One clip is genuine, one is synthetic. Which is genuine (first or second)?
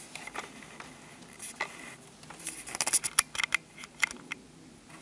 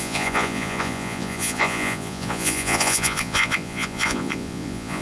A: first